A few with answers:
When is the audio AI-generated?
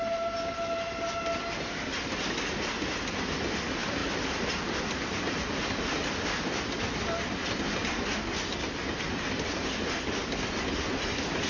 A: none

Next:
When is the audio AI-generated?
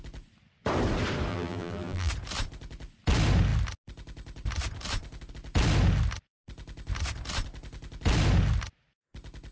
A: 1.3-2.1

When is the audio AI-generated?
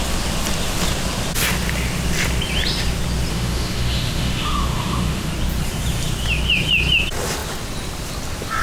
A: 3.3-5.3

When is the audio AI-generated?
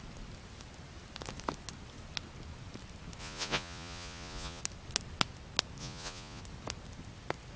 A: 3.2-4.6; 5.8-6.4